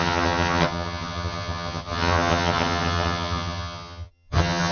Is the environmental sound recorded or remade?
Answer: remade